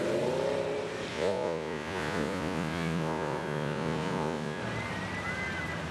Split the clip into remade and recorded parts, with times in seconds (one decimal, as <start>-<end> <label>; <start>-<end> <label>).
0.0-1.1 recorded; 1.1-4.6 remade; 4.6-5.9 recorded